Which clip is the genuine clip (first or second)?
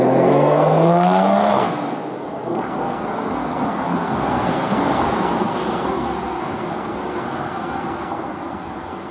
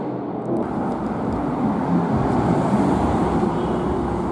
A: second